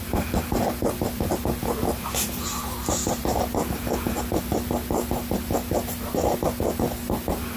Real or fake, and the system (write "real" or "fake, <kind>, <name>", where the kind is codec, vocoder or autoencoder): real